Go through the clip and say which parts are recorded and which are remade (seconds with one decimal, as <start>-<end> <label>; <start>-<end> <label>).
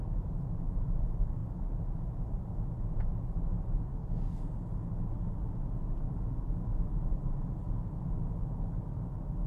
0.0-3.9 recorded; 3.9-4.4 remade; 4.4-9.5 recorded